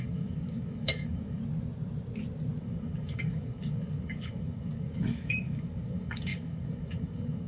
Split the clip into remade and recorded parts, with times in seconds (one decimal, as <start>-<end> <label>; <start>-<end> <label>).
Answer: 0.0-1.4 remade; 1.4-2.6 recorded; 2.6-7.5 remade